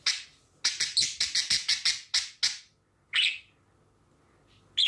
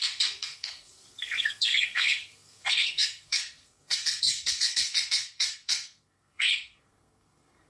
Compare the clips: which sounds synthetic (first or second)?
second